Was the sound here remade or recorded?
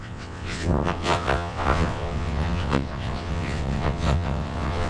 remade